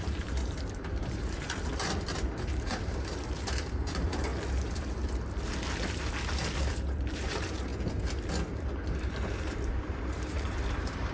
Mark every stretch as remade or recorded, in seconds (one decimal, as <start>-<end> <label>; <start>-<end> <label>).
0.0-1.7 remade; 1.7-2.4 recorded; 2.4-4.3 remade; 4.3-6.6 recorded; 6.6-7.7 remade; 7.7-9.0 recorded; 9.0-11.1 remade